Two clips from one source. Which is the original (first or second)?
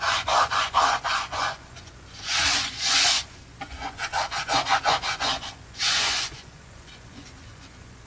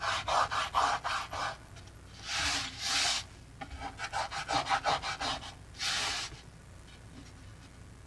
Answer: second